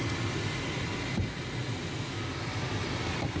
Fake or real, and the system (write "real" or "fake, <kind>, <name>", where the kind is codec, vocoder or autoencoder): real